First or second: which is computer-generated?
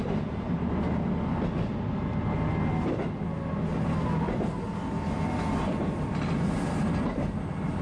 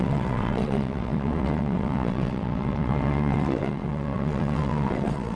second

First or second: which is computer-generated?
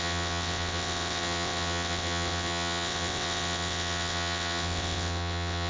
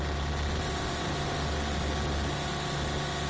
first